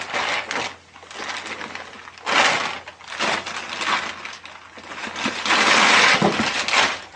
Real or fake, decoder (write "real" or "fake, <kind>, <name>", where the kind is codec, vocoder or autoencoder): real